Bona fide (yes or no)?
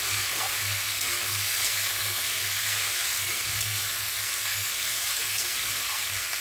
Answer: no